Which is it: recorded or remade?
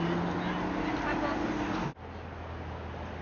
recorded